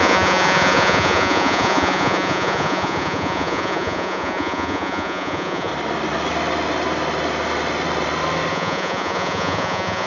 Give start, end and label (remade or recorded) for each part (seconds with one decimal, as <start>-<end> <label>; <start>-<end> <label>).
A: 0.0-5.7 remade; 5.7-8.5 recorded; 8.5-10.1 remade